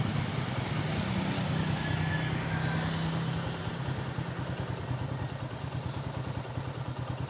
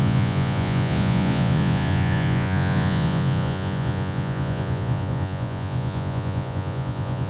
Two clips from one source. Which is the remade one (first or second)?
second